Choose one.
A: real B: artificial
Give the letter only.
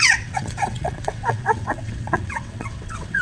B